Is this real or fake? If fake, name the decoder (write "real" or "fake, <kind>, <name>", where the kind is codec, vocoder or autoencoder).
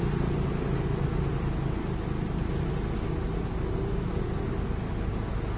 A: real